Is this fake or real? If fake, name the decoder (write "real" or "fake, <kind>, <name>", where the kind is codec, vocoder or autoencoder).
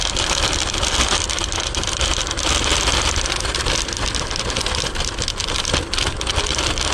real